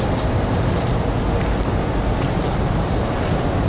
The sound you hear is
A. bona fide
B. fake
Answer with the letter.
A